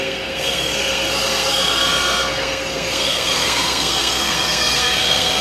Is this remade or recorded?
remade